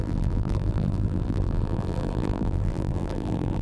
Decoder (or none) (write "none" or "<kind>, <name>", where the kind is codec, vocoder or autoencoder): vocoder, BigVGAN v2